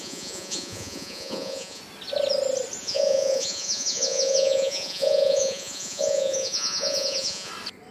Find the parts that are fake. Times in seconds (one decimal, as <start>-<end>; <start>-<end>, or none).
0.0-1.8; 2.8-7.5